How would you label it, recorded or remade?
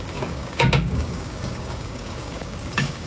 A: remade